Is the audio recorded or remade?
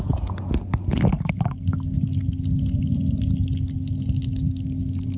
recorded